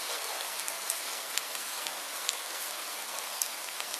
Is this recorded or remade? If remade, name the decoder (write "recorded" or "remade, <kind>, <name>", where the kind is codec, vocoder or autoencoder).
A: remade, codec, SNAC